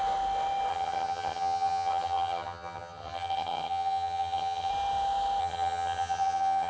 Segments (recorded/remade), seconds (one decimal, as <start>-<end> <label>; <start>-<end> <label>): 0.0-0.7 recorded; 0.7-4.7 remade; 4.7-5.4 recorded; 5.4-6.7 remade

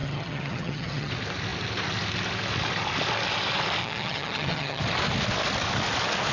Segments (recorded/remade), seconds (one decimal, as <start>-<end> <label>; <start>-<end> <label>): 0.0-1.1 remade; 1.1-3.8 recorded; 3.8-4.8 remade; 4.8-6.3 recorded

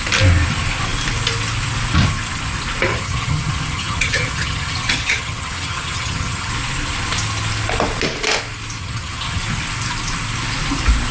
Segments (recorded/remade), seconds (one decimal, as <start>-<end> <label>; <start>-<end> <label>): 0.0-2.9 recorded; 2.9-6.5 remade; 6.5-8.8 recorded; 8.8-9.4 remade; 9.4-11.1 recorded

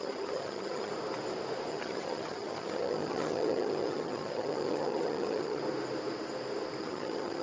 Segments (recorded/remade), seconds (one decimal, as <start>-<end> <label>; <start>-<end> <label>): 0.0-0.9 remade; 0.9-1.7 recorded; 1.7-5.6 remade; 5.6-6.8 recorded; 6.8-7.4 remade